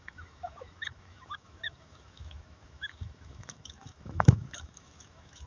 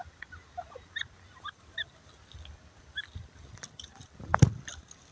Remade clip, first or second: first